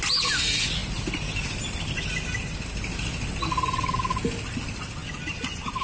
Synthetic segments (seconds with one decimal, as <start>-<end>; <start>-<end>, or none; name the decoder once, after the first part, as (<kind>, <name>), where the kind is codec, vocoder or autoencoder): none